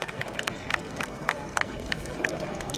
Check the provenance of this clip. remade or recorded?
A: remade